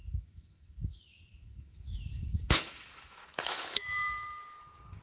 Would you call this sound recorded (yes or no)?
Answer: no